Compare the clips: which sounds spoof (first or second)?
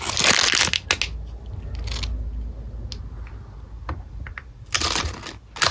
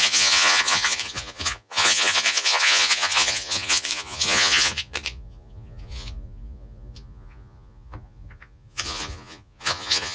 second